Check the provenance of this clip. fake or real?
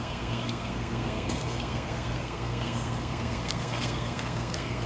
fake